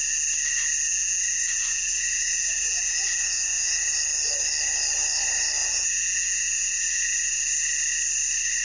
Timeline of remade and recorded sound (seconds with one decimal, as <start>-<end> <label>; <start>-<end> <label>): 0.0-0.9 recorded; 0.9-3.9 remade; 3.9-5.6 recorded; 5.6-7.4 remade; 7.4-8.6 recorded